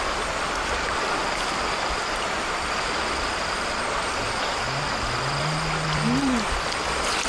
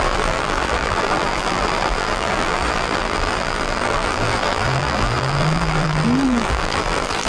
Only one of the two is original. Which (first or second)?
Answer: first